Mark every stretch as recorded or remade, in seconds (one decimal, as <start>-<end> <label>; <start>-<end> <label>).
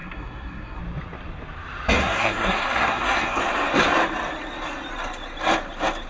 0.0-0.8 remade; 0.8-2.0 recorded; 2.0-3.4 remade; 3.4-6.1 recorded